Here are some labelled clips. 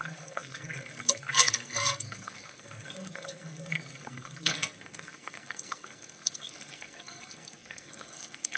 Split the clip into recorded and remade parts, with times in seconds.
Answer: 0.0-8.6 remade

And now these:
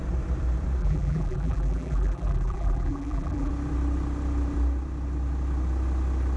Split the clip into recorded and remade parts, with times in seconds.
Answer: 0.0-0.8 recorded; 0.8-3.5 remade; 3.5-6.4 recorded

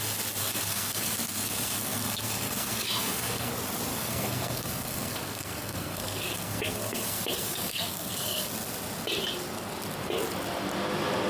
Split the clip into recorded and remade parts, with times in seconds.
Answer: 0.0-0.4 recorded; 0.4-3.5 remade; 3.5-3.9 recorded; 3.9-8.5 remade; 8.5-11.3 recorded

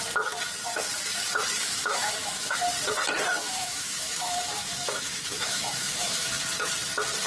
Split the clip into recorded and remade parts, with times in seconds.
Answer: 0.0-1.6 recorded; 1.6-2.6 remade; 2.6-3.3 recorded; 3.3-6.3 remade; 6.3-7.3 recorded

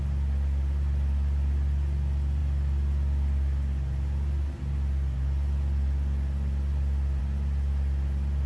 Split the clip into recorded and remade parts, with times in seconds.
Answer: 0.0-8.5 recorded

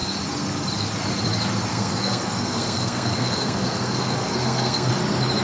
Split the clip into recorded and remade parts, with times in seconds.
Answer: 0.0-1.7 recorded; 1.7-4.9 remade; 4.9-5.4 recorded